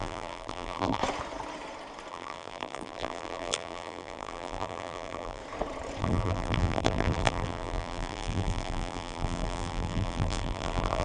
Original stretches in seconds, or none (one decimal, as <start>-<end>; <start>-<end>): 1.0-2.1; 5.4-6.0